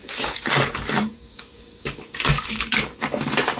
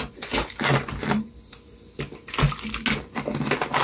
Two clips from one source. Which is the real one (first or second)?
second